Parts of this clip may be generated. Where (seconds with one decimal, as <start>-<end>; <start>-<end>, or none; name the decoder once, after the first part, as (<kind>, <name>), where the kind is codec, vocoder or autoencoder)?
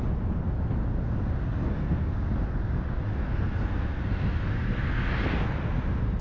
1.4-2.4 (codec, SNAC); 3.1-5.1